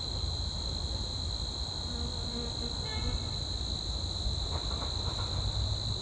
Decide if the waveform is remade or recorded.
recorded